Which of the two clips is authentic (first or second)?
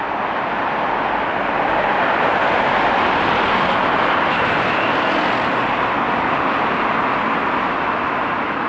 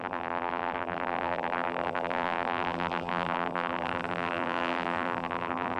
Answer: first